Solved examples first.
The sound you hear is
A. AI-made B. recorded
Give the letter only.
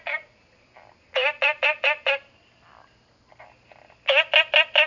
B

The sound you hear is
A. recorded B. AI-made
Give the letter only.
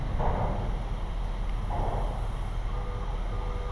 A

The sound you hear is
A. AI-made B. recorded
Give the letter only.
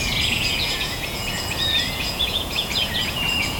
A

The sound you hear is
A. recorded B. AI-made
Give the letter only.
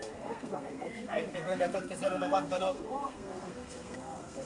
B